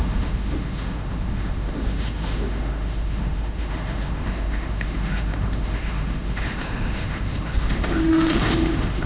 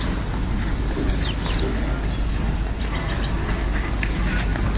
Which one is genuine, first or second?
second